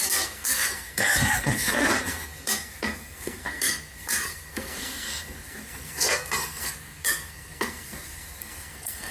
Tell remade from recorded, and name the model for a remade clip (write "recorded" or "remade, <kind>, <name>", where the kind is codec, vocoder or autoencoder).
remade, codec, SNAC